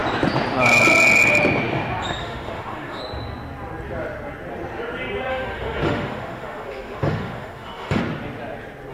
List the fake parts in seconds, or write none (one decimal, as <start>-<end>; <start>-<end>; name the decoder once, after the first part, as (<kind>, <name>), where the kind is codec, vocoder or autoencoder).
2.2-3.0 (autoencoder, DAC-VAE); 5.3-8.0